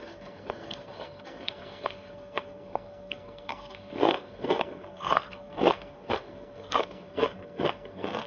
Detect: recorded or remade remade